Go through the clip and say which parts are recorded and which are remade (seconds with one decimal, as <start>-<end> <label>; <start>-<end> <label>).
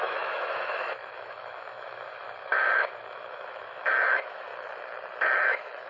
0.0-4.5 remade; 4.5-5.2 recorded; 5.2-5.9 remade